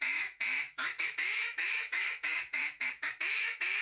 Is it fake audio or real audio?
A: fake